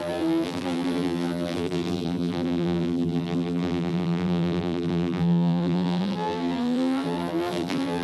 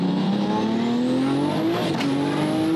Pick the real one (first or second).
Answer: second